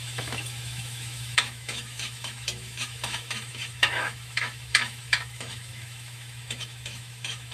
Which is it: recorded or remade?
remade